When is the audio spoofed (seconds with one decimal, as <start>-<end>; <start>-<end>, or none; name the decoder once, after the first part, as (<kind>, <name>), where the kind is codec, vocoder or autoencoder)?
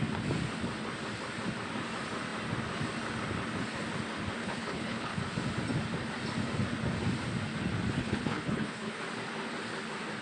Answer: 4.4-5.2 (codec, HILCodec); 8.0-9.0